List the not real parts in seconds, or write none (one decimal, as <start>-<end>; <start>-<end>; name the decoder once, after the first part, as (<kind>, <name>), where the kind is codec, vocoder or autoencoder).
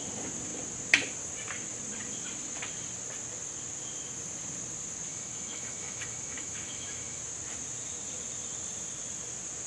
5.1-7.2 (autoencoder, DAC-VAE)